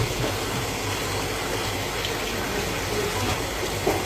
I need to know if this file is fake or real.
real